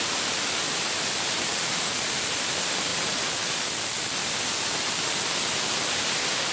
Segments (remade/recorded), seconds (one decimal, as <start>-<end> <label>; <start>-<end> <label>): 0.0-1.5 remade; 1.5-2.2 recorded; 2.2-6.5 remade